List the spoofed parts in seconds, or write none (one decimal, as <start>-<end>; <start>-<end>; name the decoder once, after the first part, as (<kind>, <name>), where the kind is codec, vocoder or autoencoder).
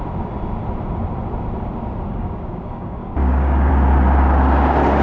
2.1-3.7 (codec, DAC)